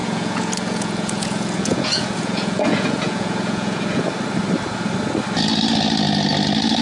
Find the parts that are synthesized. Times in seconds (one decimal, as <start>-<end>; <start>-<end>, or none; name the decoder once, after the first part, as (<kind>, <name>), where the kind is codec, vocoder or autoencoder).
0.0-4.1 (vocoder, Vocos)